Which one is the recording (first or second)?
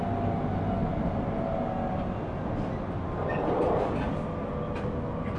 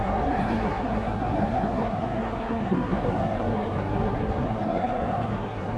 first